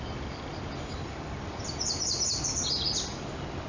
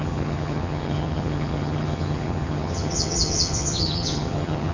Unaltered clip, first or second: first